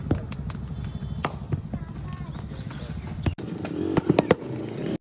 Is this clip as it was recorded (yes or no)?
yes